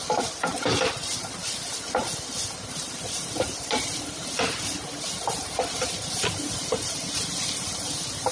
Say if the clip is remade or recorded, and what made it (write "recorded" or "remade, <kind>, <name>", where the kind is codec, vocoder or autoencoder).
recorded